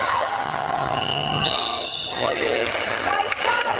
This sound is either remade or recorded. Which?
remade